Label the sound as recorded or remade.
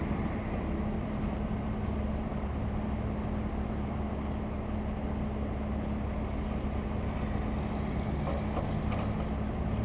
recorded